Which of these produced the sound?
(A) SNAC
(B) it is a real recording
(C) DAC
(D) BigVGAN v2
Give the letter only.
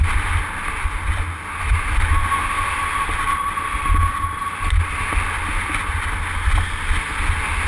B